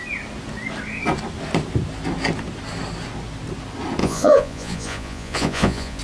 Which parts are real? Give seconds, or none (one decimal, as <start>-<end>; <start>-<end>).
0.0-4.0